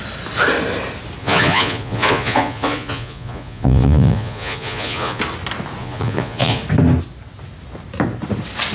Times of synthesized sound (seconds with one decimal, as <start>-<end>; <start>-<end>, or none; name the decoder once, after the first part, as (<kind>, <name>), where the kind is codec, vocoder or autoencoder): 1.2-5.2 (vocoder, Vocos); 5.8-6.6